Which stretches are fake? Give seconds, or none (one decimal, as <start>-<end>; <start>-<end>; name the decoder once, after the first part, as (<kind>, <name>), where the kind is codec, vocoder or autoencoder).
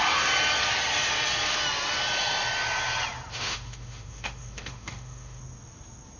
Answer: 3.3-5.4 (autoencoder, DAC-VAE)